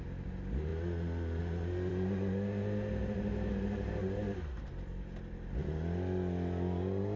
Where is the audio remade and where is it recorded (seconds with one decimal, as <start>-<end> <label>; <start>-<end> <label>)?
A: 0.0-7.2 recorded